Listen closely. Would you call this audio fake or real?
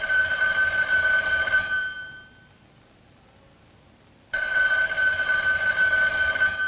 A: real